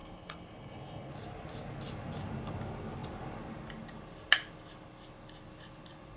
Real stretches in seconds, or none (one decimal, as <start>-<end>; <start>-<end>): 1.1-6.2

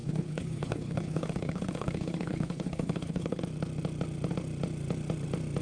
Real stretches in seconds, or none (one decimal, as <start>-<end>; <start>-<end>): 3.4-5.6

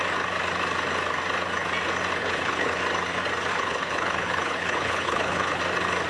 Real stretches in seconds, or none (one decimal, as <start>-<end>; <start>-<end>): 0.0-2.2; 2.8-3.5; 5.6-6.1

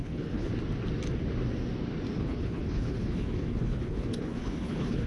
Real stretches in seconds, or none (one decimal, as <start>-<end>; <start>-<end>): 0.5-2.2